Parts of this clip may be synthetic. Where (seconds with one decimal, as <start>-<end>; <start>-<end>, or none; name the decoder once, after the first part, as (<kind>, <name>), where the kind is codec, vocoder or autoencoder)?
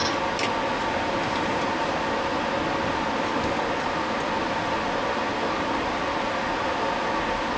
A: none